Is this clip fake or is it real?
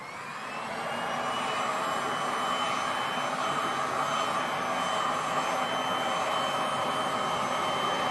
real